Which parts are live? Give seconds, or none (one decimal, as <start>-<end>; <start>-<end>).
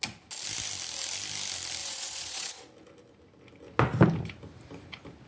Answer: 0.0-1.8; 2.5-5.3